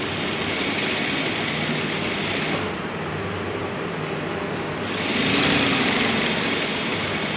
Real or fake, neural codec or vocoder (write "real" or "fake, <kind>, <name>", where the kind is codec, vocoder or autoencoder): real